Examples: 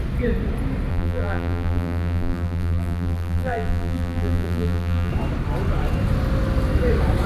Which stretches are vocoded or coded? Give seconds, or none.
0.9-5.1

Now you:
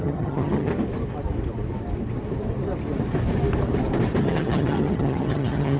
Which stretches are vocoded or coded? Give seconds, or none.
0.0-0.7; 4.2-5.8

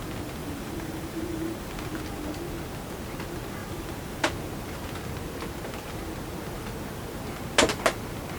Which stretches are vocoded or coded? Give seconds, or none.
0.4-2.0; 3.6-4.2

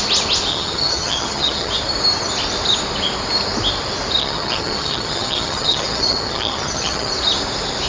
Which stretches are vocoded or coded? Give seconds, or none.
0.5-1.7; 4.2-7.1

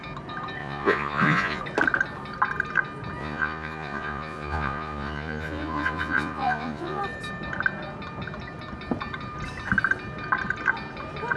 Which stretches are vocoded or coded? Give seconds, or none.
0.6-1.6; 3.2-7.0

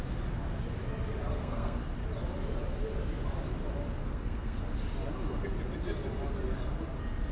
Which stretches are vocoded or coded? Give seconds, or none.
1.3-1.8; 4.0-4.6